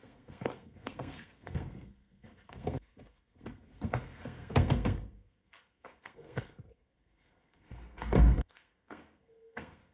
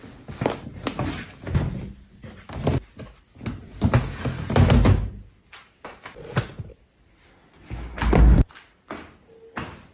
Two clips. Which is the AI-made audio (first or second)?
first